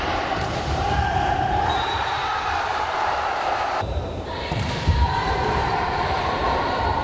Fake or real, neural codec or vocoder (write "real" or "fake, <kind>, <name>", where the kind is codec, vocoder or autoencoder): fake, vocoder, BigVGAN v2